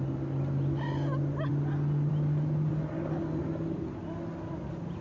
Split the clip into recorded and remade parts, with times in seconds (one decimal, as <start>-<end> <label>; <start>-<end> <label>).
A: 0.0-5.0 recorded